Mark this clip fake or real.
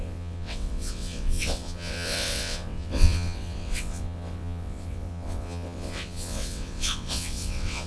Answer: fake